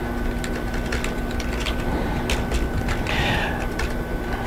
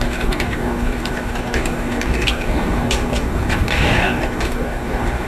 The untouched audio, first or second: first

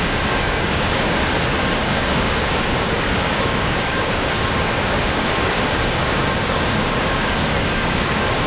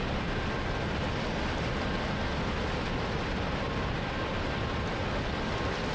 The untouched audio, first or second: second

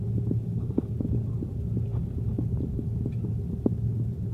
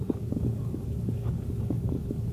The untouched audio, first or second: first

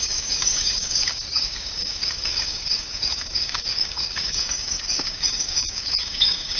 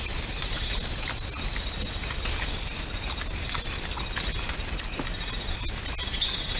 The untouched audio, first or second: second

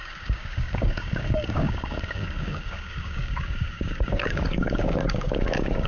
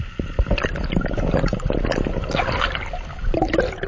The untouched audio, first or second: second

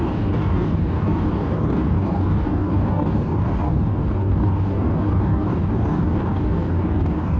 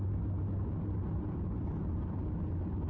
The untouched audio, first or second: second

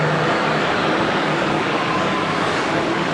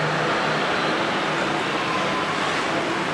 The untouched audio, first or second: second